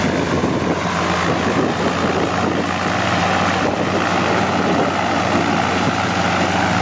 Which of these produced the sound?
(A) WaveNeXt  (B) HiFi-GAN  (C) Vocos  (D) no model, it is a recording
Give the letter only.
D